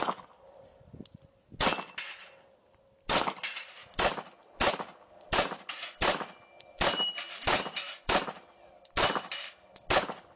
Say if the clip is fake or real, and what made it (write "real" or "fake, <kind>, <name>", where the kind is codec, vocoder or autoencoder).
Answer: real